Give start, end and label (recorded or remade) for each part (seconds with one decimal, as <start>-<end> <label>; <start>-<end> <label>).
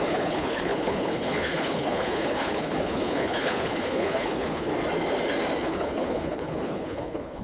0.0-4.7 remade; 4.7-5.6 recorded; 5.6-7.4 remade